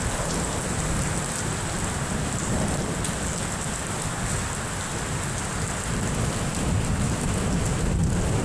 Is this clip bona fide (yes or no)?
yes